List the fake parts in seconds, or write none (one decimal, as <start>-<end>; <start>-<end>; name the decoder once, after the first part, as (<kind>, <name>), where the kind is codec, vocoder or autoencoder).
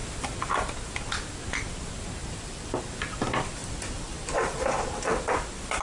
2.2-2.8 (vocoder, BigVGAN v2); 3.6-4.9